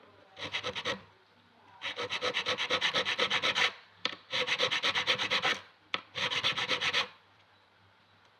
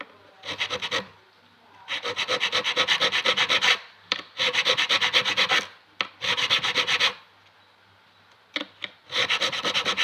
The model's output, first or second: first